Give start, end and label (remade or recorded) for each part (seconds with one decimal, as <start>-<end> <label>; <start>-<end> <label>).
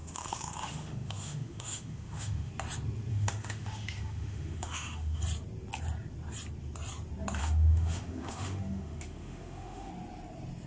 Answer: 0.0-2.5 remade; 2.5-3.1 recorded; 3.1-5.2 remade; 5.2-7.4 recorded; 7.4-9.9 remade; 9.9-10.7 recorded